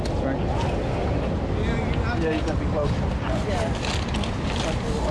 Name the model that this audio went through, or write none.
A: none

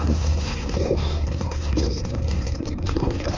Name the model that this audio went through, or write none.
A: codec, SNAC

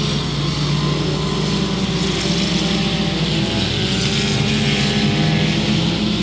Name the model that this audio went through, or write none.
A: none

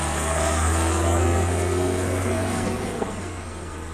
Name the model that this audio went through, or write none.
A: codec, SNAC